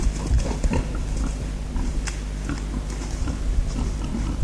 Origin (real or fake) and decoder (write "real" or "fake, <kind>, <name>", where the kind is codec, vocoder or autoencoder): real